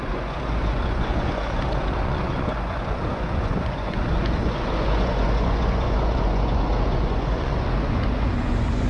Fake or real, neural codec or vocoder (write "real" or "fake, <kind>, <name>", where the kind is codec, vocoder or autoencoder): fake, vocoder, Vocos